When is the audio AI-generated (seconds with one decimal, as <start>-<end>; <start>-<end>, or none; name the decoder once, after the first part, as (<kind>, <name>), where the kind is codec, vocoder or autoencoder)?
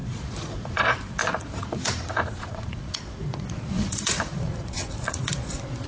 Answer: 0.0-5.9 (vocoder, Vocos)